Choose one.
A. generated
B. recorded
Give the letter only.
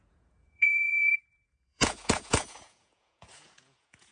A